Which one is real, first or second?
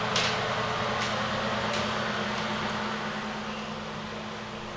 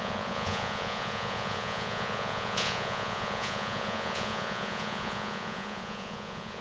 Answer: first